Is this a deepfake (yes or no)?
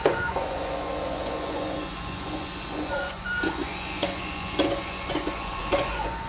yes